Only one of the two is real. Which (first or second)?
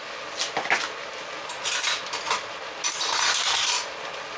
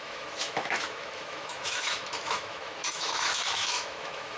first